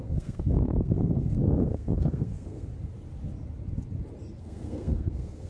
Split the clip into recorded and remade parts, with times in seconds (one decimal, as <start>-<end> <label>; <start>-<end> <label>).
0.0-2.7 remade; 2.7-4.4 recorded; 4.4-5.5 remade